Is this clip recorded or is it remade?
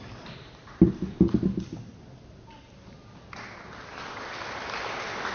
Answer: recorded